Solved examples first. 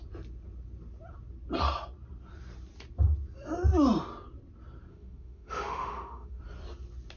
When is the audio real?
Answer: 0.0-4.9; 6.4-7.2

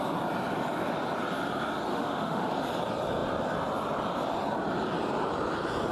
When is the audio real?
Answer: 0.0-1.9; 2.5-5.9

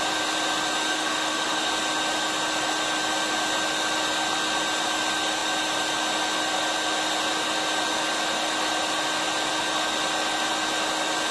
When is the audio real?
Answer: 0.0-0.9; 1.7-11.3

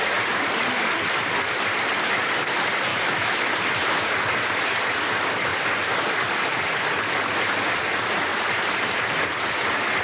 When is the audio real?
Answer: 0.0-2.9; 3.5-10.0

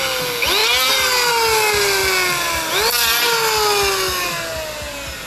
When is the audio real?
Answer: 0.0-5.3

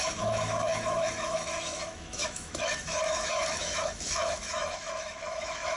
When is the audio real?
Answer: none